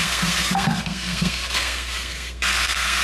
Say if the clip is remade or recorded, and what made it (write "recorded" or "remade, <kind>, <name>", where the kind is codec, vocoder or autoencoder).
remade, codec, SNAC